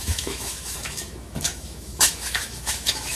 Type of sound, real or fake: fake